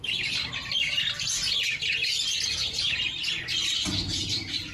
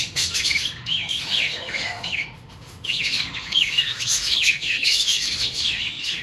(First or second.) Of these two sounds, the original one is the first